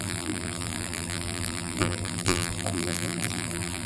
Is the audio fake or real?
fake